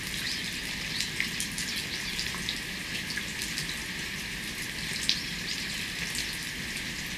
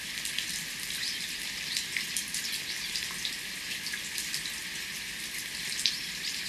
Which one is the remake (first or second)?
second